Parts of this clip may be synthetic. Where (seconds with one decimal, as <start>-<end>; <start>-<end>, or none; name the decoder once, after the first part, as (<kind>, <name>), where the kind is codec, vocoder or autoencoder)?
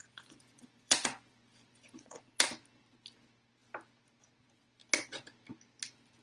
0.0-2.3 (vocoder, Vocos)